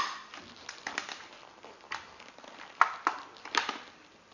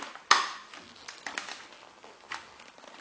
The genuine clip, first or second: second